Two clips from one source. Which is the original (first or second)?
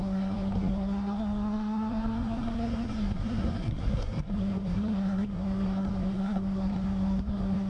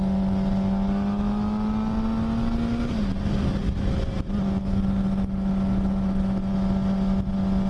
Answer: second